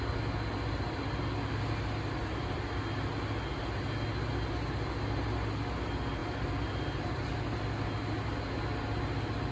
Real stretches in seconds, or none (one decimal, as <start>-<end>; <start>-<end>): 0.0-9.5